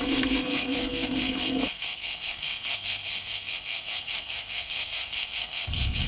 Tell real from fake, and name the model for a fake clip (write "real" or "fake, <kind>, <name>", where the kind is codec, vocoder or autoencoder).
fake, codec, SNAC